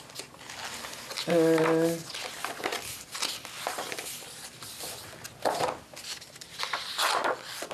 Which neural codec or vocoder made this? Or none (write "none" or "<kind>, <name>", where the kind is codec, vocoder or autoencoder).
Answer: none